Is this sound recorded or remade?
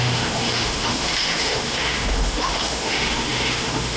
remade